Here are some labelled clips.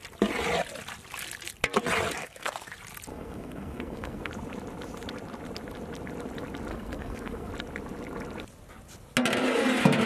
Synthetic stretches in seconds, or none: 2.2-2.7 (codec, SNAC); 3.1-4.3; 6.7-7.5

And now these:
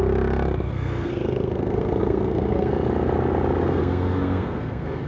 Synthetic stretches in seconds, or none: 0.7-2.7 (codec, SNAC); 3.8-5.1

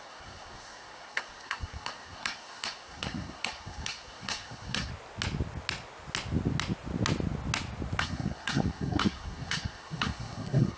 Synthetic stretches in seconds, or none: 0.0-4.9 (codec, SNAC); 8.0-10.8

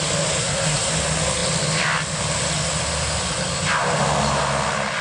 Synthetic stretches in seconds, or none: 0.4-0.9 (codec, SNAC)

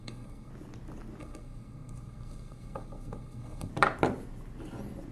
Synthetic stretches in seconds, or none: 0.0-0.5 (codec, SNAC); 1.2-3.7